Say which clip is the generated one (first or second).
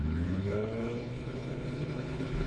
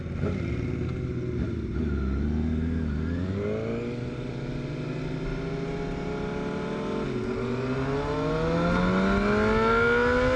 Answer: first